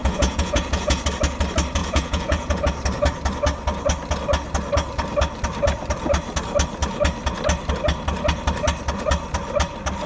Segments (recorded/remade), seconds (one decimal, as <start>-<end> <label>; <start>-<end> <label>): 0.0-1.0 remade; 1.0-1.8 recorded; 1.8-2.6 remade; 2.6-10.1 recorded